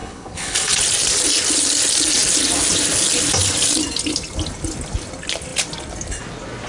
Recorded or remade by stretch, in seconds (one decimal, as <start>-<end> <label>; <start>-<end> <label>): 0.0-0.8 remade; 0.8-6.7 recorded